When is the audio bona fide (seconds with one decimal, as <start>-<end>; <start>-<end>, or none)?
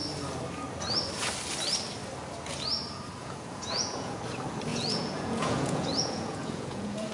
0.0-3.2; 4.2-4.7